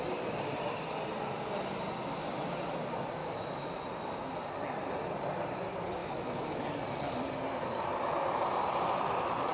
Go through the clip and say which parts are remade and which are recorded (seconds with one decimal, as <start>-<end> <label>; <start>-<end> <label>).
0.0-3.2 recorded; 3.2-3.8 remade; 3.8-6.0 recorded; 6.0-6.6 remade; 6.6-9.5 recorded